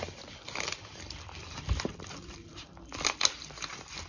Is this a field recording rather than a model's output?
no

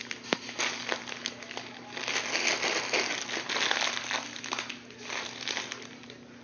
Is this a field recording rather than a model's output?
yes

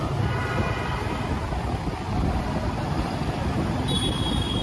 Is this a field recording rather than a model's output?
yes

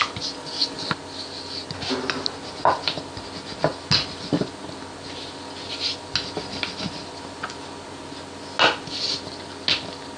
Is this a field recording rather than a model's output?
yes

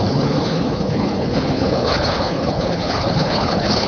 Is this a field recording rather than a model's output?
no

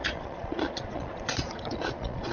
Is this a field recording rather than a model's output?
no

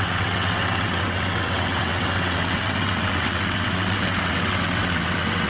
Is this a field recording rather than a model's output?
no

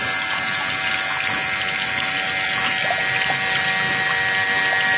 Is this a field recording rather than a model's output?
yes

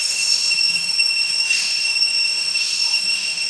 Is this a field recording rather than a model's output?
no